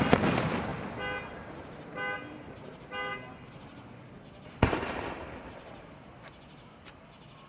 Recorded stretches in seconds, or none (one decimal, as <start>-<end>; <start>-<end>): 0.0-7.5

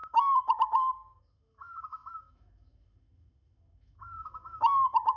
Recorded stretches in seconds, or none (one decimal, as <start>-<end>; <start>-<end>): none

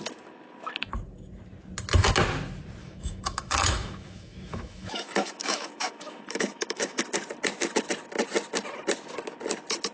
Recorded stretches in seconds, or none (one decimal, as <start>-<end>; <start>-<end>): 0.0-2.8; 7.0-9.9